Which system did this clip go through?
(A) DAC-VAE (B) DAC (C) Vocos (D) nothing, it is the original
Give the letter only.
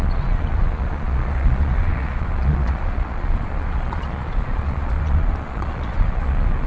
C